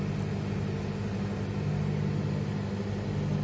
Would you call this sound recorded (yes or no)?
yes